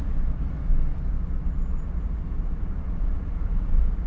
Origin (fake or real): real